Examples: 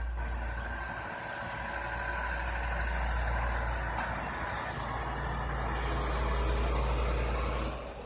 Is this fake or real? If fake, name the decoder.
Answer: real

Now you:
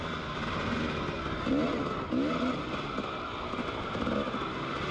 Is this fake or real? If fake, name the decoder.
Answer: real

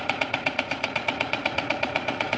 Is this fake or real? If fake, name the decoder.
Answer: fake, vocoder, Vocos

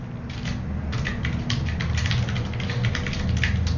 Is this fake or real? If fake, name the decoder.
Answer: real